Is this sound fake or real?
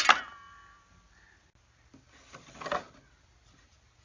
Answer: real